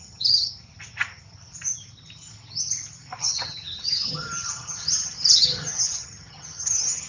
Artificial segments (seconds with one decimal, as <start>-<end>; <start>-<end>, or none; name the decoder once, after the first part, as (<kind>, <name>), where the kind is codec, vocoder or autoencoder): 0.0-0.5 (vocoder, HiFi-GAN); 3.2-7.1